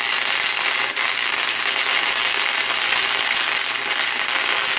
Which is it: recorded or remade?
recorded